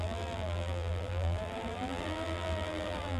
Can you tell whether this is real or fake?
fake